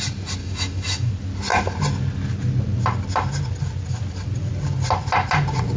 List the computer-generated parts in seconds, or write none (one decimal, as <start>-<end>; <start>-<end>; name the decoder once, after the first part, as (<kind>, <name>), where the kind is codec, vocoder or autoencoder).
0.4-1.1 (autoencoder, DAC-VAE)